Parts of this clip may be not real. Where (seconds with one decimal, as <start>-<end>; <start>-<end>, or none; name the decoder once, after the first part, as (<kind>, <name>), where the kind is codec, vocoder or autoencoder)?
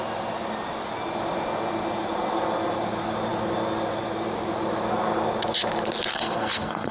6.1-6.9 (codec, SNAC)